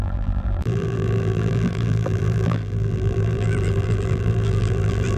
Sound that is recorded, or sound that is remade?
remade